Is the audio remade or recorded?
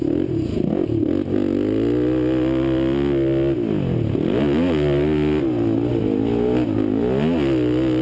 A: recorded